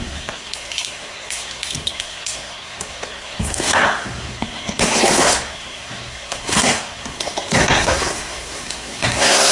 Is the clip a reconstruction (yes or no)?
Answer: yes